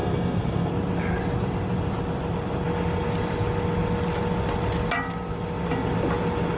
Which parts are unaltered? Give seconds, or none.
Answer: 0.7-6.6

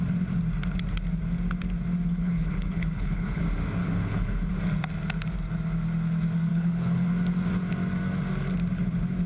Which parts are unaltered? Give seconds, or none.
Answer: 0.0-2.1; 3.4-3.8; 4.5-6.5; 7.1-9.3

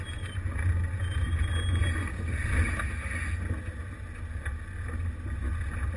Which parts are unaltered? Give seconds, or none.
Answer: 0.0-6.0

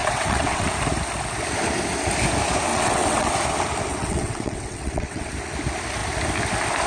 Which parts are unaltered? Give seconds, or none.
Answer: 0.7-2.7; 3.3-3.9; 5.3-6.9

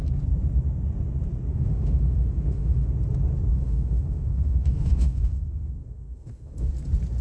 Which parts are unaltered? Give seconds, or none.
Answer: 0.0-1.5; 2.9-3.5; 6.7-7.2